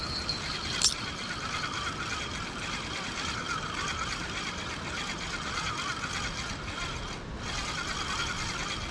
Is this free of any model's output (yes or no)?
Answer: yes